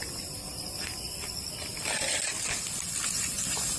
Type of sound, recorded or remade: recorded